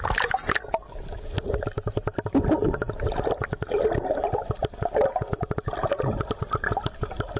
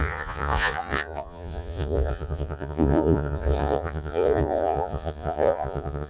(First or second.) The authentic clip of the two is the first